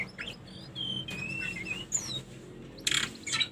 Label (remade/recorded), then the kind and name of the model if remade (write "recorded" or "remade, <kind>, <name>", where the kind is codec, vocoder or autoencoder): recorded